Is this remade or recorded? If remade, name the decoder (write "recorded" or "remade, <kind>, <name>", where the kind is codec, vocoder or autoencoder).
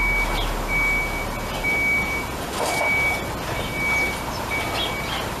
recorded